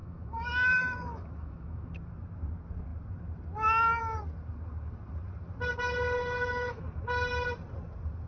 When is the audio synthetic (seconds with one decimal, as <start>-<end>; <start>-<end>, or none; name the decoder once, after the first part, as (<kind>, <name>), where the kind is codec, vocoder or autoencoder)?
0.0-1.9 (autoencoder, DAC-VAE); 6.2-6.8